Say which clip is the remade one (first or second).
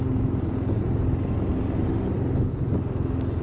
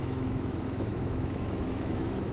second